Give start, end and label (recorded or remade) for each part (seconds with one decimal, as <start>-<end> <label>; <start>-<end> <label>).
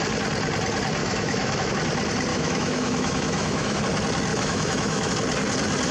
0.0-1.0 recorded; 1.0-1.7 remade; 1.7-2.3 recorded; 2.3-3.8 remade; 3.8-4.3 recorded; 4.3-5.1 remade; 5.1-5.9 recorded